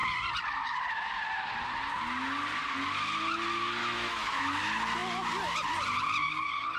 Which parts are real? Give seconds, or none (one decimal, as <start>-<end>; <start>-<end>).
0.0-3.8; 4.4-6.8